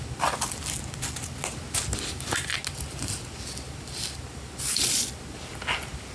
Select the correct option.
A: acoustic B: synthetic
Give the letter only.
A